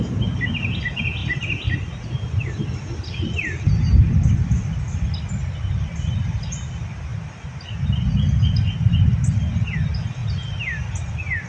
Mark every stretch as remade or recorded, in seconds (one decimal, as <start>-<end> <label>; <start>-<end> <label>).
0.0-1.2 recorded; 1.2-5.3 remade; 5.3-11.5 recorded